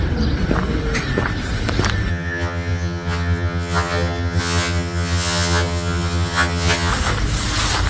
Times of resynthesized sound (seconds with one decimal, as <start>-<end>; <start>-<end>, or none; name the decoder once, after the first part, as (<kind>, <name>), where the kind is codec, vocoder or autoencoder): 2.1-6.9 (vocoder, HiFi-GAN)